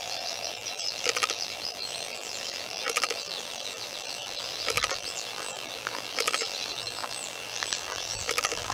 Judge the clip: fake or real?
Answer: fake